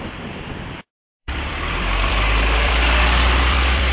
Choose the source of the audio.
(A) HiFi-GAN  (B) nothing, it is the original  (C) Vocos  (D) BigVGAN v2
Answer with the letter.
D